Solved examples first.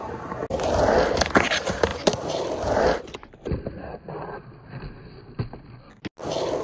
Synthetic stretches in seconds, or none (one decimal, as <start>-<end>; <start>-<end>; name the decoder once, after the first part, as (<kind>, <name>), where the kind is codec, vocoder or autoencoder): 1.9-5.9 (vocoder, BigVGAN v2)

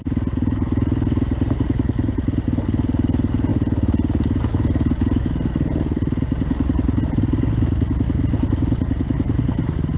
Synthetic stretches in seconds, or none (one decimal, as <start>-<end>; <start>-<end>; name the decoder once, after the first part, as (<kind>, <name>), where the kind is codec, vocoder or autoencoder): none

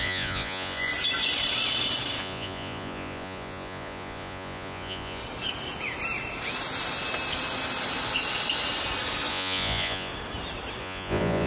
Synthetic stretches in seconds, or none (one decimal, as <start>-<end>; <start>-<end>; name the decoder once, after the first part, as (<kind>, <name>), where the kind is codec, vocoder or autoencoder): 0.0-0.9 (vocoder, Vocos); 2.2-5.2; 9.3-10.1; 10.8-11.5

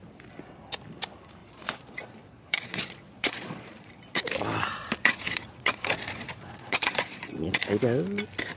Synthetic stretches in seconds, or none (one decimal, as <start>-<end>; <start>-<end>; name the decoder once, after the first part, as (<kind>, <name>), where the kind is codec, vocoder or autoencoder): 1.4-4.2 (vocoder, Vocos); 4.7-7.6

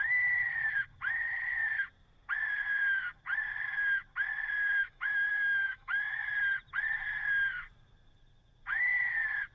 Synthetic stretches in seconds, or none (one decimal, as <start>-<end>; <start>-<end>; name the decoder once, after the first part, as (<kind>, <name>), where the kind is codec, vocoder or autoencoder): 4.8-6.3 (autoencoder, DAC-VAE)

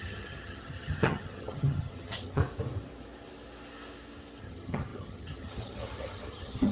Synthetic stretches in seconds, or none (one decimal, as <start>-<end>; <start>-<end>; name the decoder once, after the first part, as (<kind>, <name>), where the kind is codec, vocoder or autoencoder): 0.0-2.4 (vocoder, HiFi-GAN); 4.4-6.7